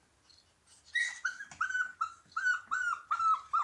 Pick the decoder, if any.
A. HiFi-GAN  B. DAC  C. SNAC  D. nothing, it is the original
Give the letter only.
D